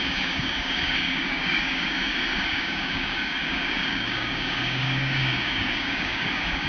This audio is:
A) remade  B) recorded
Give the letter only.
A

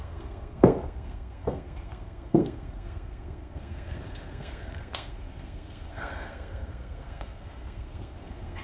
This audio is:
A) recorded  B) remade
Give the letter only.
B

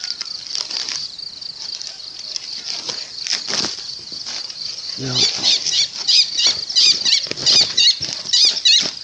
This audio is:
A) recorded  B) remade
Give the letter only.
A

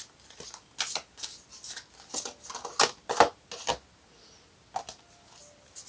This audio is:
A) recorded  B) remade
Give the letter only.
A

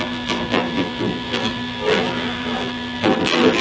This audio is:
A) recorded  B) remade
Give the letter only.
B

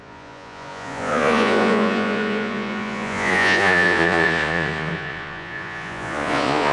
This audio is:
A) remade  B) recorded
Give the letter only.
A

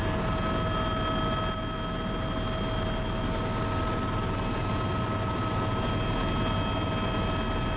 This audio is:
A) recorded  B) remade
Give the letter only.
A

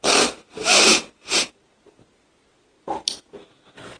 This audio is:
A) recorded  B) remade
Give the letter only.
A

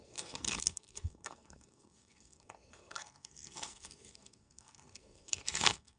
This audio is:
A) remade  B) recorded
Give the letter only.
A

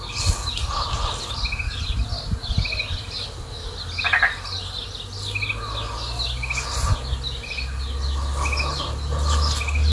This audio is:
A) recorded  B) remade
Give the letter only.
A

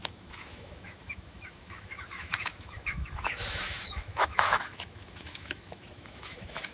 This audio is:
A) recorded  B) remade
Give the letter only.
B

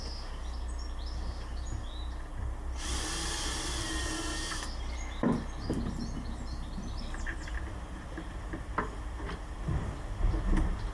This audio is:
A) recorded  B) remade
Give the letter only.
A